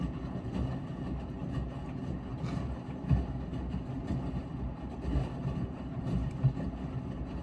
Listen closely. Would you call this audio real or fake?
real